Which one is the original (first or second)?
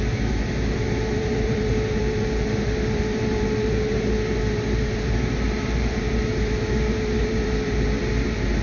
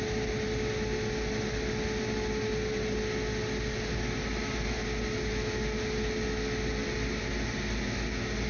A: second